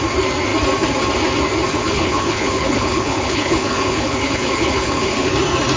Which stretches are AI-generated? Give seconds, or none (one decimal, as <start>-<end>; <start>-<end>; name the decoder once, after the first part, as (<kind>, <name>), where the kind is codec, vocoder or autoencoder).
1.8-5.3 (codec, HILCodec)